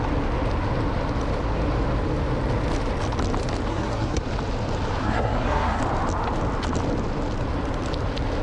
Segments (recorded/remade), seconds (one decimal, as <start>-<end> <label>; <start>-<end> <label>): 0.0-3.7 recorded; 3.7-4.2 remade; 4.2-5.0 recorded; 5.0-5.8 remade; 5.8-8.4 recorded